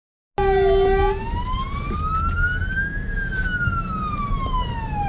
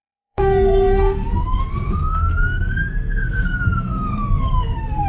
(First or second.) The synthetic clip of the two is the second